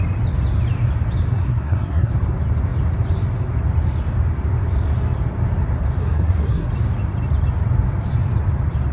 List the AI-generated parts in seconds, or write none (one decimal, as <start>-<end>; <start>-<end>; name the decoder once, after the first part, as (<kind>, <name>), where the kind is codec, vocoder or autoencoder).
1.4-2.1 (codec, SNAC); 6.0-6.7